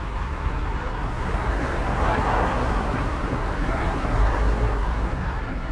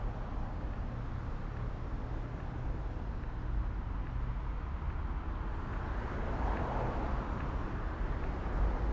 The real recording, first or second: second